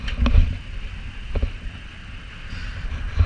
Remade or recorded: recorded